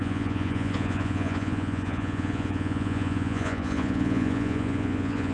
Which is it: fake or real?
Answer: fake